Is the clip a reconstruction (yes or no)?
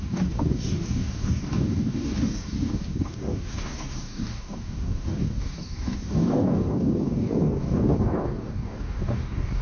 yes